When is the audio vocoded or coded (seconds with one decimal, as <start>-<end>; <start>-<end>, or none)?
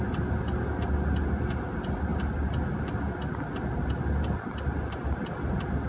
none